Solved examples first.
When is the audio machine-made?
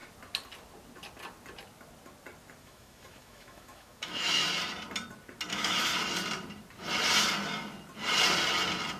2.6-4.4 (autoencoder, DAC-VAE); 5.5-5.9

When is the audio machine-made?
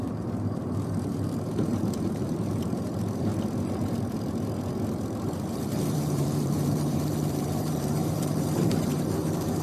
0.0-3.3 (vocoder, BigVGAN v2); 5.0-9.6